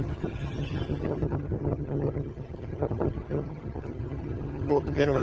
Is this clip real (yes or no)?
no